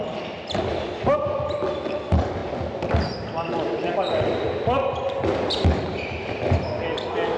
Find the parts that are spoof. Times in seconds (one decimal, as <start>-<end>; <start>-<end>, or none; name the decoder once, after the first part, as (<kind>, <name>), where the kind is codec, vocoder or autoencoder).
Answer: none